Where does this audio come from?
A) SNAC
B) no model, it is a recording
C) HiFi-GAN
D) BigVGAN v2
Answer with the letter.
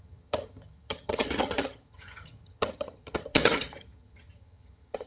C